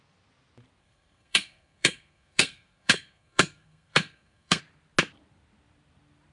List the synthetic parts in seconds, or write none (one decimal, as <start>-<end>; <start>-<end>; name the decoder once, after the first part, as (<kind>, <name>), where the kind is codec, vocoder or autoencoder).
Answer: 0.8-4.6 (codec, SNAC)